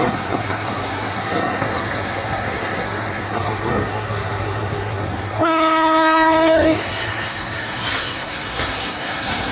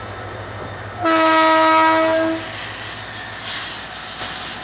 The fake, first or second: first